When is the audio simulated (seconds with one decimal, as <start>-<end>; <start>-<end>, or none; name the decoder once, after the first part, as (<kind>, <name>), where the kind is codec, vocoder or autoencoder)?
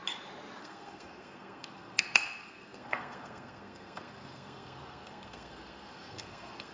0.6-6.7 (codec, SNAC)